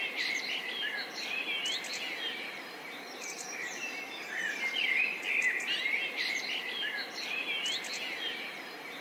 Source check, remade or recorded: recorded